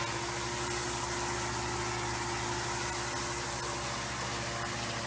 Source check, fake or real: real